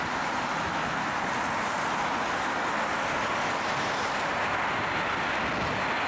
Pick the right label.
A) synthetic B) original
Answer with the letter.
B